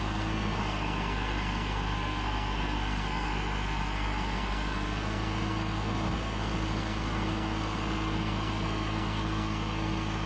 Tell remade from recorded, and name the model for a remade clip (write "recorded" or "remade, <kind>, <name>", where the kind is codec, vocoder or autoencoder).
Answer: remade, codec, SNAC